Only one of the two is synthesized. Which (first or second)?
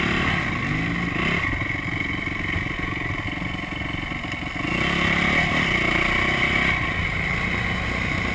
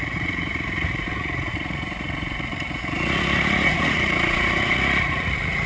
second